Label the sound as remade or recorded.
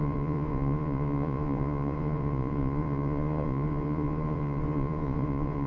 remade